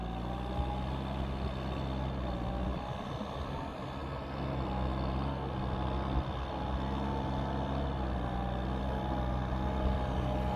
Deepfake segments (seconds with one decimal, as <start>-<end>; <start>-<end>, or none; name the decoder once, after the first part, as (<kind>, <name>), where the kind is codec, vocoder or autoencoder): none